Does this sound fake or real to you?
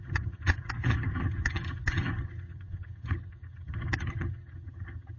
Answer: fake